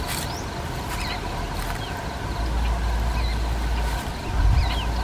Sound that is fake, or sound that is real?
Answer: real